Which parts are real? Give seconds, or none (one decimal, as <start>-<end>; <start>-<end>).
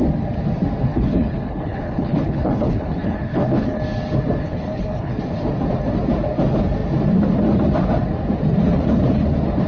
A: 0.0-0.9; 3.8-4.4; 5.2-9.7